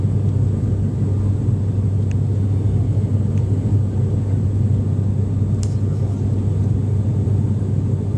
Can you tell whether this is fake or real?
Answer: real